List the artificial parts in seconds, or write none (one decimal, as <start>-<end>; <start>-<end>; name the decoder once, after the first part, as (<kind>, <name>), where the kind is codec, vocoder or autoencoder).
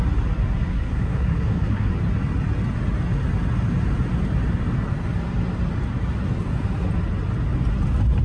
0.7-1.9 (codec, SNAC)